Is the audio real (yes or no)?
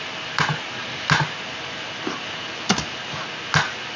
yes